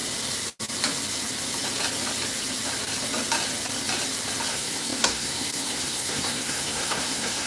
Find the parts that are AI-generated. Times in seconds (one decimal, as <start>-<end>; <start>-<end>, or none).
4.5-7.5